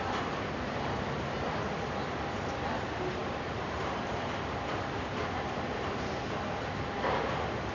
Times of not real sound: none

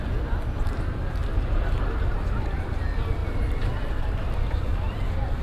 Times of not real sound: none

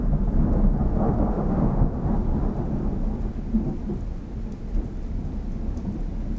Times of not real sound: 1.3-2.1

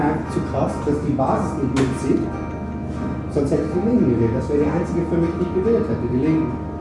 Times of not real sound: none

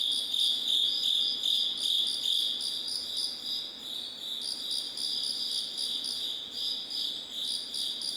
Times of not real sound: none

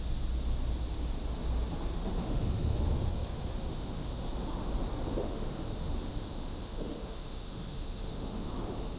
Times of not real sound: 2.2-4.7; 5.2-9.0

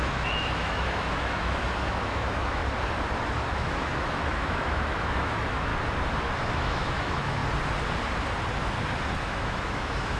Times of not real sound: 0.0-2.6; 3.5-5.7; 6.5-7.4; 9.2-10.2

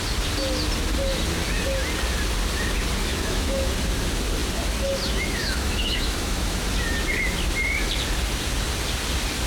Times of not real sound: 3.1-3.7; 5.4-6.6